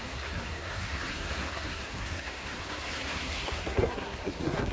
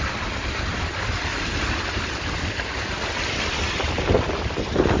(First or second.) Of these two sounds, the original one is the second